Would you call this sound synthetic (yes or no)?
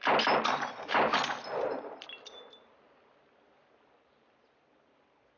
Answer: no